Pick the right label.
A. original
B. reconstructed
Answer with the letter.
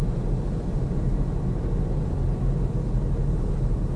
A